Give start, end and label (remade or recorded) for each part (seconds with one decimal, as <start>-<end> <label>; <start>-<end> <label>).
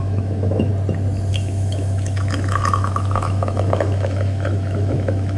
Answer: 0.0-0.7 remade; 0.7-1.3 recorded; 1.3-5.4 remade